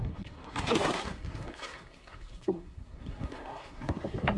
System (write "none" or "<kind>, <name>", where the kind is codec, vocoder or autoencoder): codec, SNAC